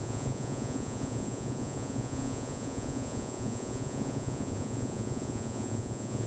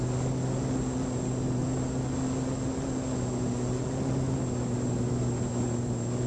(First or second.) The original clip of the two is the second